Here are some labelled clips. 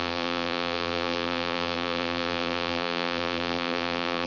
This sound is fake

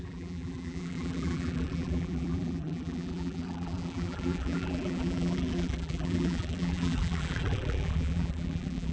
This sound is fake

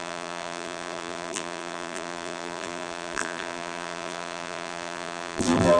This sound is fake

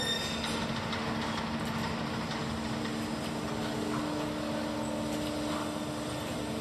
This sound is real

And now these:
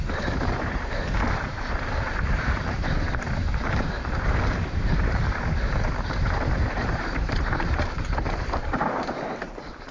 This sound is fake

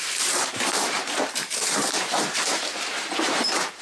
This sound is fake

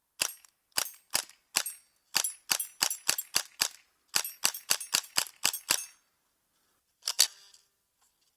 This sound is real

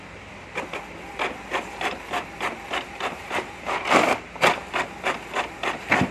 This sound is fake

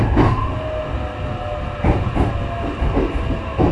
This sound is real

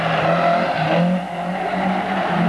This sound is real